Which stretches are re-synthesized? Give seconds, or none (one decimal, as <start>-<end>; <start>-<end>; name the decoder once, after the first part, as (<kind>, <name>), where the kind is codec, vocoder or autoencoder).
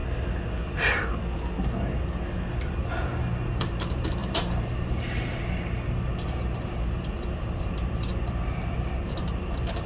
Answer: 2.3-9.9 (vocoder, BigVGAN v2)